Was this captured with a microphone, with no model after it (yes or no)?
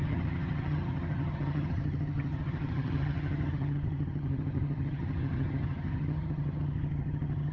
no